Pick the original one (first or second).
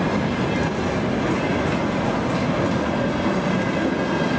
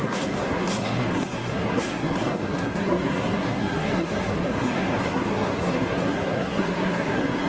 first